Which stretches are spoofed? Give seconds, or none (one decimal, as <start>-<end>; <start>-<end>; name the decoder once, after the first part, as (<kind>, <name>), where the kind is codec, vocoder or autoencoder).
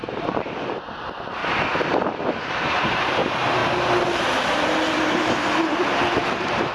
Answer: 0.0-1.4 (vocoder, BigVGAN v2); 2.5-3.6; 4.1-6.7